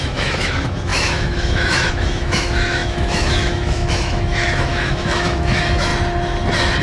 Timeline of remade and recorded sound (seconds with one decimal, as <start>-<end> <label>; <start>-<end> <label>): 0.0-5.9 remade; 5.9-6.8 recorded